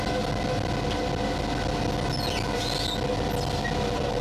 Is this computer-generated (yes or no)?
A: no